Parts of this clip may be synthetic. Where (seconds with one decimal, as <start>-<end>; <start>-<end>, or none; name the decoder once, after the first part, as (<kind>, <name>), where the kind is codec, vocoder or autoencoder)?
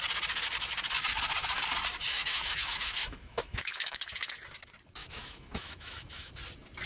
2.1-4.3 (autoencoder, DAC-VAE); 5.0-6.3